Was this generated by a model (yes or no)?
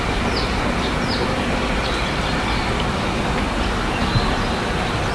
no